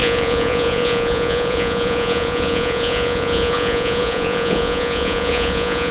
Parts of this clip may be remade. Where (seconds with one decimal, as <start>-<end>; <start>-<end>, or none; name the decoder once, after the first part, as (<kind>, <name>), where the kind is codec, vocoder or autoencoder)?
0.0-5.9 (vocoder, Vocos)